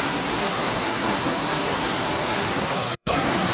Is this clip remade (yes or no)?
yes